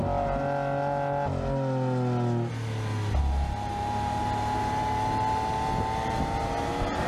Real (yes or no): yes